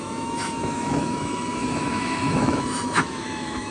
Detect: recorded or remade remade